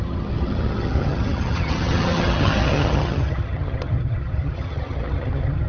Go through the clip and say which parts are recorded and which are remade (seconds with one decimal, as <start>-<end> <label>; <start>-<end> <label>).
0.0-5.7 remade